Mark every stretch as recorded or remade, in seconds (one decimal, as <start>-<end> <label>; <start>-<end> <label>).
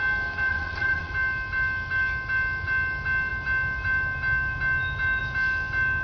0.0-0.5 recorded; 0.5-1.1 remade; 1.1-6.0 recorded